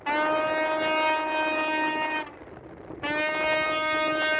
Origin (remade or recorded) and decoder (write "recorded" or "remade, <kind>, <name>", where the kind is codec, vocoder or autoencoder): recorded